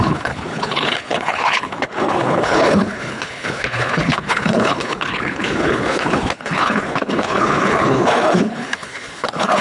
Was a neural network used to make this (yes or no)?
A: yes